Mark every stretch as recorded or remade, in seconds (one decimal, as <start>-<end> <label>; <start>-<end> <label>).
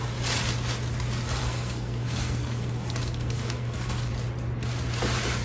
0.0-1.4 recorded; 1.4-4.1 remade; 4.1-5.4 recorded